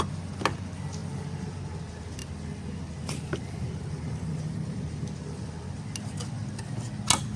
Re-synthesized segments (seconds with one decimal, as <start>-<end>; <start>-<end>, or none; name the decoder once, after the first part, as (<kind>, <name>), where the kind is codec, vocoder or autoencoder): none

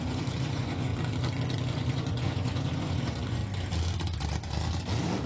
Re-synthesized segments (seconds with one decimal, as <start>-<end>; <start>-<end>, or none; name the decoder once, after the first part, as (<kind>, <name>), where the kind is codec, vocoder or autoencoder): 0.0-0.9 (vocoder, Vocos); 1.7-3.4

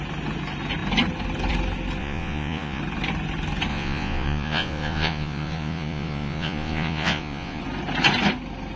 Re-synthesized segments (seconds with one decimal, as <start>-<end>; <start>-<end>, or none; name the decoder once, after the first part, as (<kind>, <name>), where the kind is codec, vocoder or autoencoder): 2.0-2.8 (vocoder, Vocos); 3.7-7.6

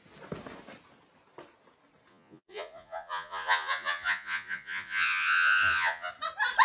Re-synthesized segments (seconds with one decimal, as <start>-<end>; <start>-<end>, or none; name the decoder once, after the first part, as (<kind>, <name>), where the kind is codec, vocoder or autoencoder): 2.1-6.1 (vocoder, Vocos)

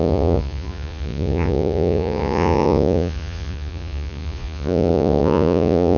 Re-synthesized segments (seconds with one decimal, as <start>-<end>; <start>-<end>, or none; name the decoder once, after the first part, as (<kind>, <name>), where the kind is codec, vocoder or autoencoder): 0.0-6.0 (vocoder, Vocos)

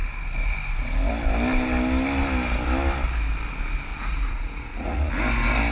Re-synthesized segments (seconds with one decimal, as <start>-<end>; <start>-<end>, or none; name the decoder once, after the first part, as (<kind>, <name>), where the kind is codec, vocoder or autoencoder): 3.9-5.1 (vocoder, Vocos)